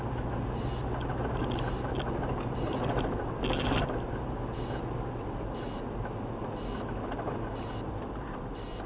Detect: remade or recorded recorded